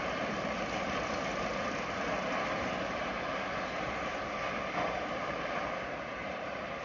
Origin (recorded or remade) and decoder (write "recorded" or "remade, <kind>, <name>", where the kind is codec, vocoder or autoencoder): remade, vocoder, BigVGAN v2